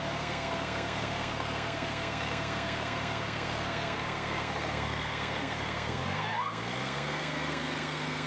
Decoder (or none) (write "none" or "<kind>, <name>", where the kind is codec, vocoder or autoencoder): codec, SNAC